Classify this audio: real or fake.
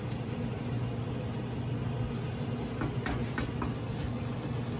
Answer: real